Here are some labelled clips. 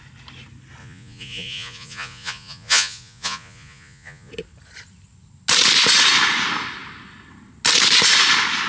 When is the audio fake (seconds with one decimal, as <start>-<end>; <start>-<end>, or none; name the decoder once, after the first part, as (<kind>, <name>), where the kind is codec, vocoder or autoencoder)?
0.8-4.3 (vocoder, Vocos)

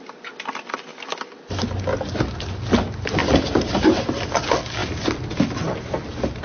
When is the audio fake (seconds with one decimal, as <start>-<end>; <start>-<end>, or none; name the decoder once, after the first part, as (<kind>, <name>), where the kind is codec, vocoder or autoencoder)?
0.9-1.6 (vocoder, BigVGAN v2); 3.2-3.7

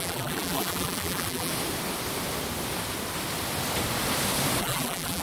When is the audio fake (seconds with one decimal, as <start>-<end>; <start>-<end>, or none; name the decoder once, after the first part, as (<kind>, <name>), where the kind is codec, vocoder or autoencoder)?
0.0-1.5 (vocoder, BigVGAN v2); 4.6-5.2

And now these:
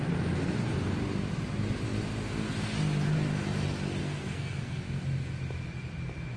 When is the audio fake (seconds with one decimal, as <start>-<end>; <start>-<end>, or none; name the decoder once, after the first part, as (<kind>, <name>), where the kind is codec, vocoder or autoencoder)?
4.0-5.0 (codec, SNAC)

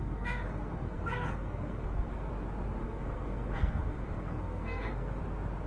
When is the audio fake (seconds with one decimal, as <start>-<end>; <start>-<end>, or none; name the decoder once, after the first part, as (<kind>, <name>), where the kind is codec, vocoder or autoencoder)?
0.0-2.3 (codec, SNAC); 2.8-5.2

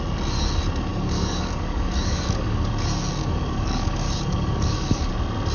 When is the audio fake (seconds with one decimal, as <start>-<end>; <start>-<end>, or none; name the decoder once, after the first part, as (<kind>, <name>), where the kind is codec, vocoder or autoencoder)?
0.9-2.7 (codec, DAC); 3.2-5.1

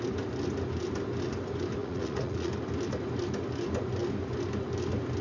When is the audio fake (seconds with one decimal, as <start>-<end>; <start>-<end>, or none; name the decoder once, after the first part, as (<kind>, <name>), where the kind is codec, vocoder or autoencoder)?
1.8-2.5 (vocoder, Vocos)

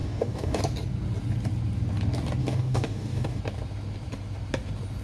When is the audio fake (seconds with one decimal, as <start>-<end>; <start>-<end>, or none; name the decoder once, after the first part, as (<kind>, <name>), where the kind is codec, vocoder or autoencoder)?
0.0-0.6 (codec, DAC); 2.4-3.4